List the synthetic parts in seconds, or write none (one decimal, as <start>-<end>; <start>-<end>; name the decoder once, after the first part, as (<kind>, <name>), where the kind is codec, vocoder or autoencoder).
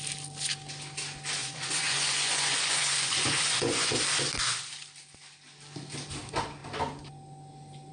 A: 1.4-3.9 (vocoder, Vocos)